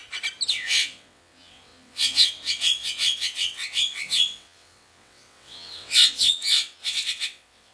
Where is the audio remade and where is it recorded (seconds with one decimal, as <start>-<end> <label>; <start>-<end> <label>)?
0.0-0.5 recorded; 0.5-7.7 remade